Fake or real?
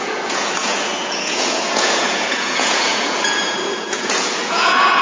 fake